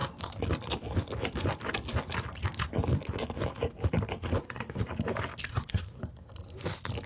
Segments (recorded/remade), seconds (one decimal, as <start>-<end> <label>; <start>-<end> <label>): 0.0-4.4 recorded; 4.4-4.9 remade; 4.9-5.5 recorded; 5.5-6.0 remade; 6.0-7.1 recorded